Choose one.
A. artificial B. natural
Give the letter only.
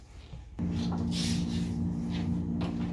B